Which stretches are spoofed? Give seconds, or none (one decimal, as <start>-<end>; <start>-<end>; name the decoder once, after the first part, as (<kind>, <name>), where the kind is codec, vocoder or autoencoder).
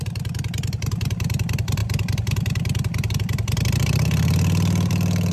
none